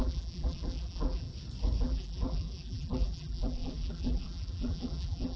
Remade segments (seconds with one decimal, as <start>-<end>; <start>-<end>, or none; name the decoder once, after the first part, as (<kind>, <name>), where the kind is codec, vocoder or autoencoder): 0.0-1.3 (vocoder, BigVGAN v2); 1.8-5.4